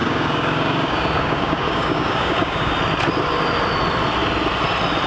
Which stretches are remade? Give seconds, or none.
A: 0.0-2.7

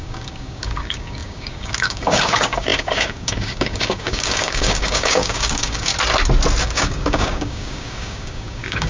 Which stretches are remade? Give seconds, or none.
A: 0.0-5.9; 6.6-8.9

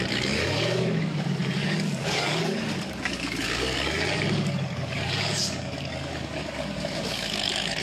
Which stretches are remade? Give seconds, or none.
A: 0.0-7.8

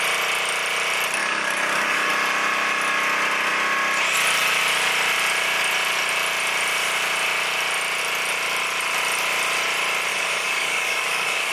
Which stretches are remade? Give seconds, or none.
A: 1.2-2.1; 10.1-11.5

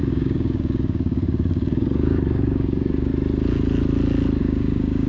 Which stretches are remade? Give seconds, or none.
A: 0.0-3.1; 4.4-5.1